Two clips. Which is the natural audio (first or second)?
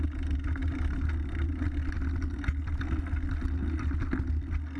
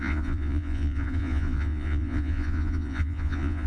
first